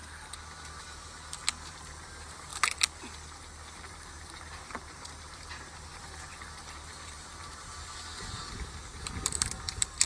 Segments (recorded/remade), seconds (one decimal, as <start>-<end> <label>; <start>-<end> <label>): 0.0-0.8 recorded; 0.8-2.5 remade; 2.5-3.9 recorded; 3.9-10.1 remade